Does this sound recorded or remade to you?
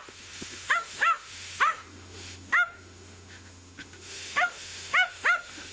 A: remade